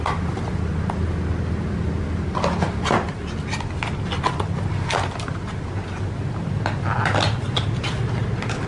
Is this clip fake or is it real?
real